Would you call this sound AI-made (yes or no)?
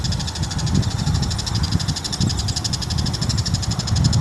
no